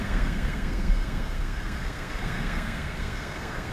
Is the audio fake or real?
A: fake